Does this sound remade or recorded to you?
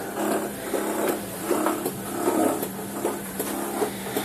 recorded